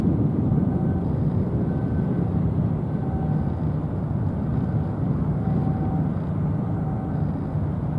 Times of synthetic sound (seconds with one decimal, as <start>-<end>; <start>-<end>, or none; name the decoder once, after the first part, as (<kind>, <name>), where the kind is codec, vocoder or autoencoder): none